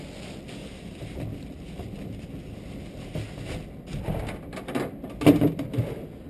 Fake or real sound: real